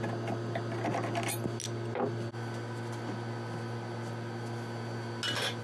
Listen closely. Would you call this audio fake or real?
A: real